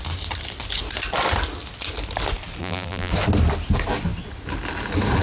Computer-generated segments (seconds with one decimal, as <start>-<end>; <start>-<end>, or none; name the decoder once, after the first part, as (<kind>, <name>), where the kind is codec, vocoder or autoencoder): 2.6-3.1 (vocoder, BigVGAN v2)